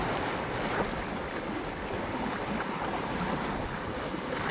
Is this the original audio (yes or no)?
yes